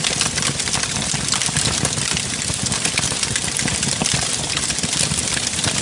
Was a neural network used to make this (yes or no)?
yes